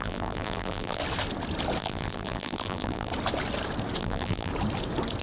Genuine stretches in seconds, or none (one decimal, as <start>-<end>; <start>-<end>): 1.0-1.8; 3.1-4.0; 4.5-5.2